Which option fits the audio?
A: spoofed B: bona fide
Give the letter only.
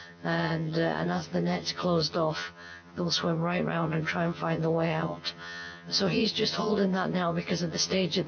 A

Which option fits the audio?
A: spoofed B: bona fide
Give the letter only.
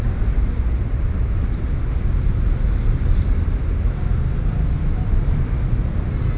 B